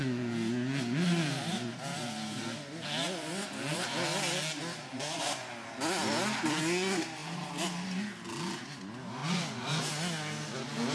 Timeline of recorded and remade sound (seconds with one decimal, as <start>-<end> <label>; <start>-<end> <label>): 0.0-4.9 recorded; 4.9-5.5 remade; 5.5-9.2 recorded; 9.2-9.9 remade; 9.9-10.9 recorded